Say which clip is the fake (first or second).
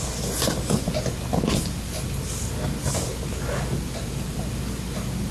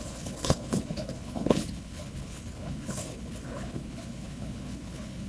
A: second